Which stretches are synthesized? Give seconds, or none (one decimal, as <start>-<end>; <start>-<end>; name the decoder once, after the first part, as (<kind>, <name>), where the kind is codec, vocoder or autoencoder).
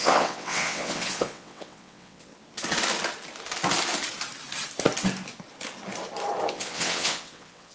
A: 0.0-2.3 (vocoder, WaveNeXt); 6.5-7.7